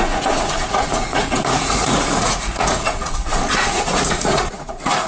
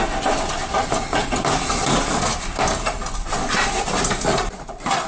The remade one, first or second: first